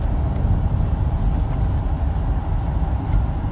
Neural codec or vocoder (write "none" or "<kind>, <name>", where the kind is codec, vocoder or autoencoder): none